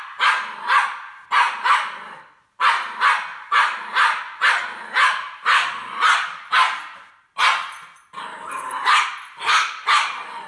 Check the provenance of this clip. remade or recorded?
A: recorded